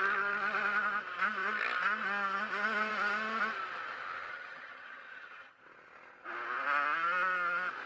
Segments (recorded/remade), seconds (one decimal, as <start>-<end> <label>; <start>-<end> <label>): 0.0-4.3 recorded; 4.3-5.6 remade; 5.6-7.9 recorded